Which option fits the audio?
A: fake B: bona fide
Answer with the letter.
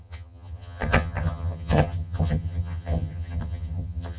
A